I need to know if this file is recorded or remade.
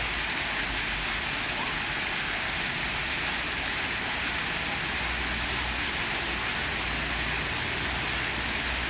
recorded